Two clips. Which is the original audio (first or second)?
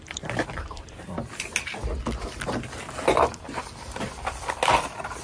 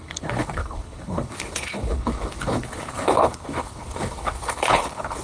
first